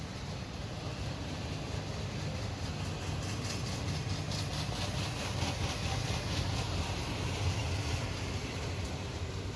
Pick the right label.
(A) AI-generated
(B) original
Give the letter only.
B